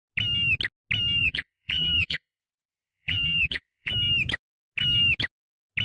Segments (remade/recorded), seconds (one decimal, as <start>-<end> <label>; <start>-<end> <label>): 0.0-1.2 recorded; 1.2-3.9 remade; 3.9-5.8 recorded